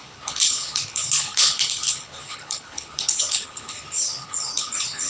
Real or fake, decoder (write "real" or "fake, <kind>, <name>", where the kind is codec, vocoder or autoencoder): fake, codec, HILCodec